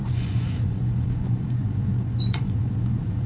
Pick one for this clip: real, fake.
fake